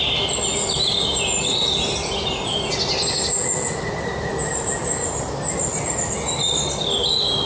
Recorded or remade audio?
recorded